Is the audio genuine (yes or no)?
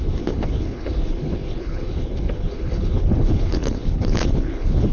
no